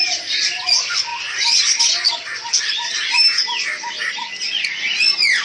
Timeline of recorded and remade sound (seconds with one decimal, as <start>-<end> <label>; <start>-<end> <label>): 0.0-5.4 recorded